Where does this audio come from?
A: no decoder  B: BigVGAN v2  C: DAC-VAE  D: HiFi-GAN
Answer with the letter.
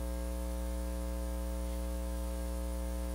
C